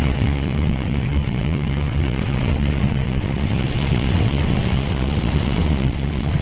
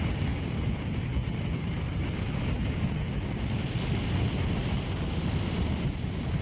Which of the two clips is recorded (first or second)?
second